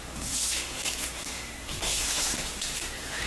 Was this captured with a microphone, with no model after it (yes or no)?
no